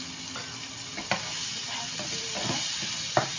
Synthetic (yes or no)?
no